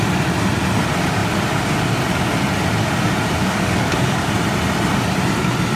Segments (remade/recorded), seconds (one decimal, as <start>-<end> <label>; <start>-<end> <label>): 0.0-3.4 recorded; 3.4-4.3 remade; 4.3-5.8 recorded